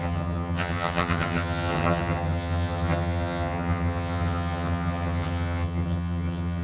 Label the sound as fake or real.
fake